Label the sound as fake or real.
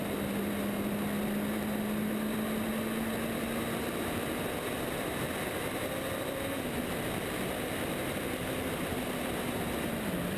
real